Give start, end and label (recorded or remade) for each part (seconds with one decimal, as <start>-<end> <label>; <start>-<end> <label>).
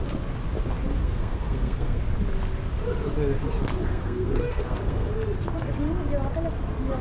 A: 0.0-1.0 recorded; 1.0-2.0 remade; 2.0-3.9 recorded; 3.9-5.1 remade; 5.1-7.0 recorded